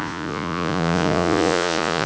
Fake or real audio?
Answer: fake